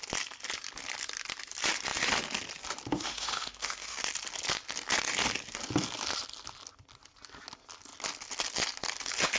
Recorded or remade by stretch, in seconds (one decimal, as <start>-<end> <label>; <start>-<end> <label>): 0.0-2.9 recorded; 2.9-4.0 remade; 4.0-9.4 recorded